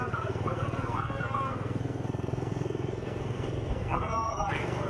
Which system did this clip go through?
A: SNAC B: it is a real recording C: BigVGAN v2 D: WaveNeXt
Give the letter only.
A